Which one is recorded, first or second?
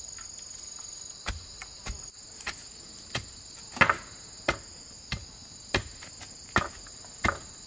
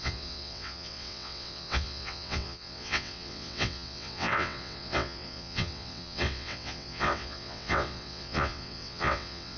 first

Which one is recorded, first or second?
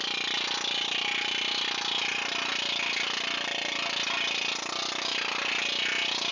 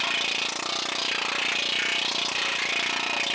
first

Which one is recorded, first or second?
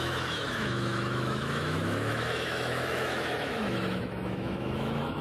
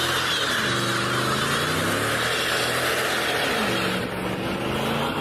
second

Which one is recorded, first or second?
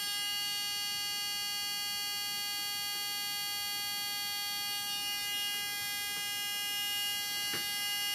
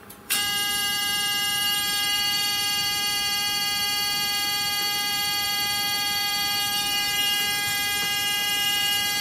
first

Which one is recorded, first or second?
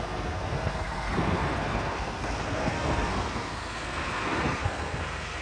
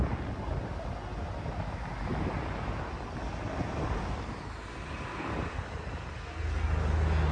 second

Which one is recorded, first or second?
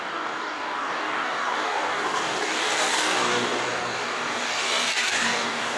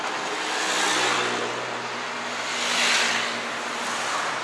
second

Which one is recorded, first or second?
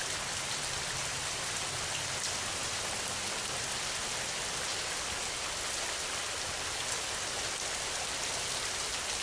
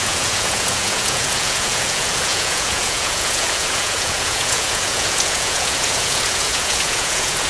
first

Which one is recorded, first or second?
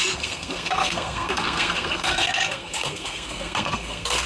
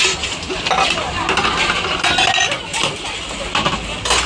second